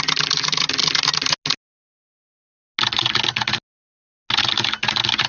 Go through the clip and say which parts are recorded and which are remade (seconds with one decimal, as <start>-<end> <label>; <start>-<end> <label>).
0.0-5.3 recorded